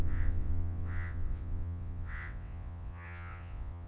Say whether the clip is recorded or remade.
remade